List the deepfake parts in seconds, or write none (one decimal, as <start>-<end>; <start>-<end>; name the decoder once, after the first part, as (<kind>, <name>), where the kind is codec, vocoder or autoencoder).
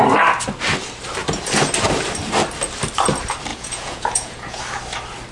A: 3.5-4.6 (vocoder, Vocos)